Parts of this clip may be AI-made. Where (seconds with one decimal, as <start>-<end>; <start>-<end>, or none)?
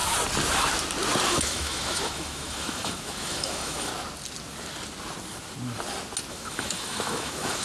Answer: 1.3-3.9; 6.3-7.6